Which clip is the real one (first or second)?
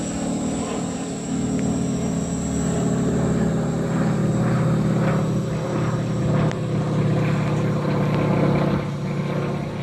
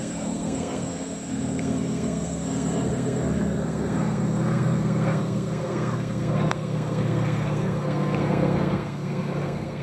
first